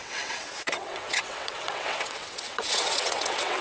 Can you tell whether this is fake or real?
fake